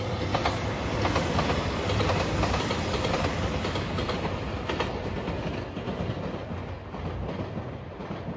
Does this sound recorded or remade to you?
recorded